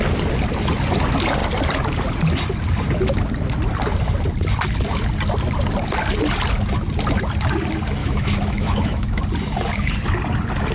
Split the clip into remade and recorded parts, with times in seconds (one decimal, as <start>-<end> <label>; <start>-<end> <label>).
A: 0.0-8.0 recorded; 8.0-9.2 remade; 9.2-10.7 recorded